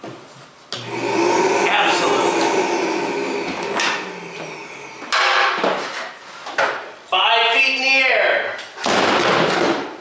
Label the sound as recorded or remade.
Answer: recorded